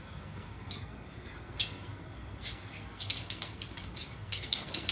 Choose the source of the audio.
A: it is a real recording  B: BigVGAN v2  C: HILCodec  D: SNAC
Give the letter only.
D